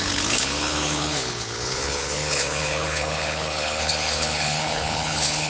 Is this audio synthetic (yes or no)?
yes